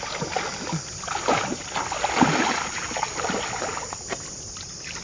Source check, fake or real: real